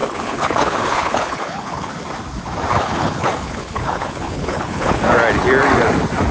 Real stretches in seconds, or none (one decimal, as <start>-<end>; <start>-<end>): 1.9-2.7; 5.0-6.3